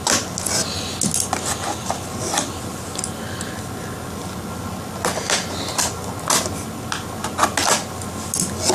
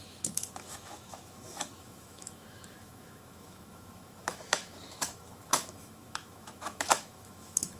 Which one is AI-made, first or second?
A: second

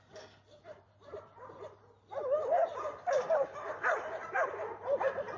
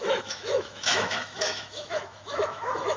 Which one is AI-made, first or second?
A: second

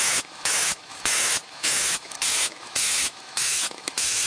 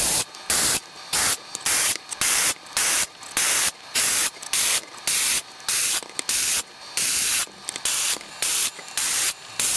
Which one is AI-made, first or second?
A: first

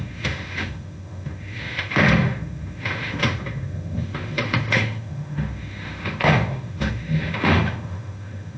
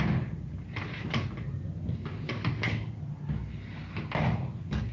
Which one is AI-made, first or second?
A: first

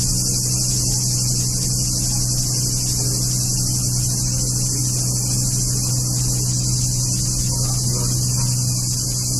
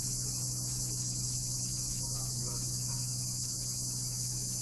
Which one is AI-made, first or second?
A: second